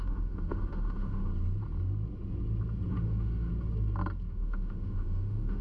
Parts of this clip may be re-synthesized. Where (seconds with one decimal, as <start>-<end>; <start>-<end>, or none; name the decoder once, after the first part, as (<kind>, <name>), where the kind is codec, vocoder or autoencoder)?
0.0-1.3 (autoencoder, DAC-VAE); 2.9-3.5; 4.3-5.6